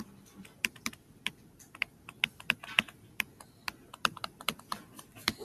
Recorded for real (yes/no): yes